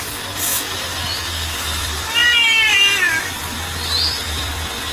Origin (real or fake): fake